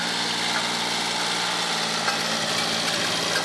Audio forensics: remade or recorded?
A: recorded